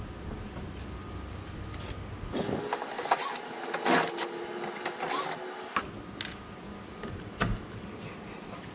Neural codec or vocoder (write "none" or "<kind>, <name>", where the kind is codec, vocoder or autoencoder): none